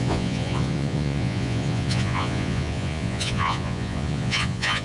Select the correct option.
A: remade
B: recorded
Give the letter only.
A